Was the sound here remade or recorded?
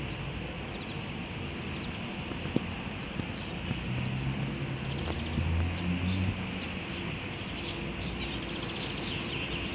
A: recorded